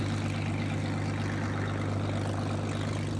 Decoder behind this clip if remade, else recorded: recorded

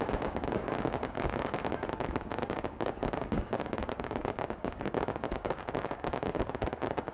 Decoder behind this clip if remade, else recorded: remade, codec, DAC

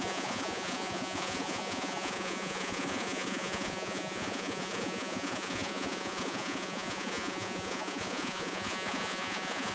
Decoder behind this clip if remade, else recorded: remade, vocoder, Vocos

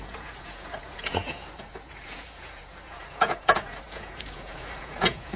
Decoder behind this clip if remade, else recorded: remade, vocoder, Vocos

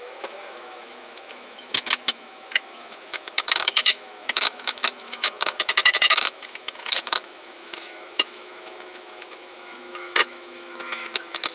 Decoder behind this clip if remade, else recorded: remade, autoencoder, DAC-VAE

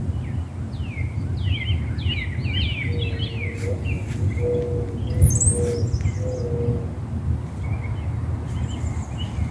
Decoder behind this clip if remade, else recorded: recorded